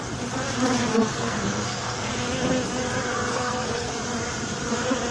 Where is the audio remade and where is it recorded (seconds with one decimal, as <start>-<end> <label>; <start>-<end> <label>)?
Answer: 0.0-0.9 recorded; 0.9-2.1 remade; 2.1-3.3 recorded; 3.3-3.9 remade; 3.9-5.1 recorded